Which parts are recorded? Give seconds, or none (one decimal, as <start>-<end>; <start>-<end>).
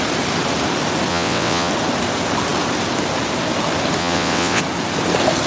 0.0-1.1; 1.7-4.0; 4.6-5.5